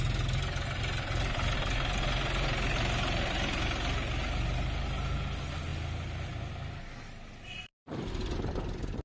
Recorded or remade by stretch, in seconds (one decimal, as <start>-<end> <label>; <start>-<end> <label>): 0.0-9.0 recorded